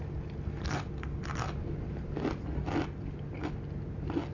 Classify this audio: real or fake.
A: real